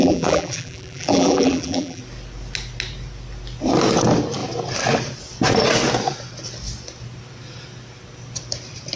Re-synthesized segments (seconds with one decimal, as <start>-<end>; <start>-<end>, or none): 0.0-2.0